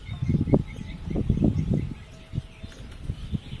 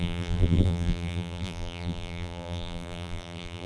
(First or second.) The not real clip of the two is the second